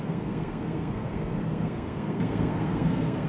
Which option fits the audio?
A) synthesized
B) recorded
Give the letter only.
A